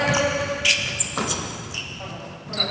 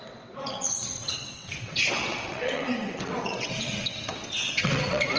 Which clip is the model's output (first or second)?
second